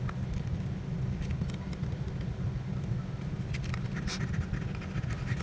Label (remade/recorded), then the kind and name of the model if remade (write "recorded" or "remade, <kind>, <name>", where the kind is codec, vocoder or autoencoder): recorded